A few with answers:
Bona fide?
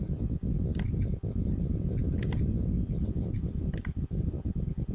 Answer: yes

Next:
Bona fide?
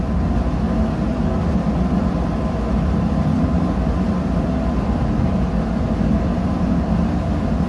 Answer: yes